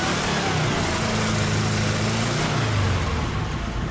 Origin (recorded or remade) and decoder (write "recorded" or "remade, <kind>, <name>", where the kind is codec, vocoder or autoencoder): recorded